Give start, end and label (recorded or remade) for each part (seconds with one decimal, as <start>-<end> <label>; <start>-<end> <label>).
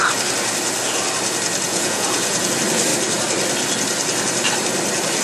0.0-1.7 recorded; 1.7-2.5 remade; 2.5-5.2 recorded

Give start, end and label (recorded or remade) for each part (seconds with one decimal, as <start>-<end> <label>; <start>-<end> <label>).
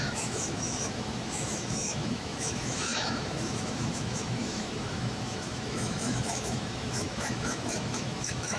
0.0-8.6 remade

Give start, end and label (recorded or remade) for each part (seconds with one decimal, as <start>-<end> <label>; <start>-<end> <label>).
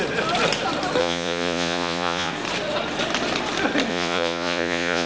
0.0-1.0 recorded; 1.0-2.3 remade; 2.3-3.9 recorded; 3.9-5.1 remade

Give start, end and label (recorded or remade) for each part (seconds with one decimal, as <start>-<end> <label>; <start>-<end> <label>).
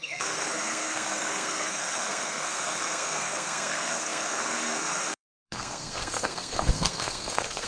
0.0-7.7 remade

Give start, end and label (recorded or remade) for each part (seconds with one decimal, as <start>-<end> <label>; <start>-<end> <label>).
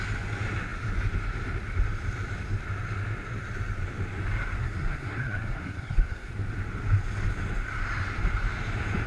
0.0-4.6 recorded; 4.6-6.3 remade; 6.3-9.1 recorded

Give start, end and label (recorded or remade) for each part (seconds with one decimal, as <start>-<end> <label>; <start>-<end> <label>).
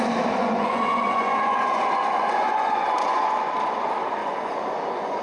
0.0-0.4 recorded; 0.4-3.5 remade; 3.5-4.2 recorded; 4.2-5.2 remade